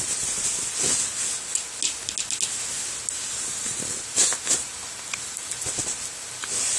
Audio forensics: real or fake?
real